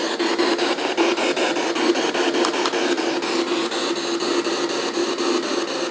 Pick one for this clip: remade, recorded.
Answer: recorded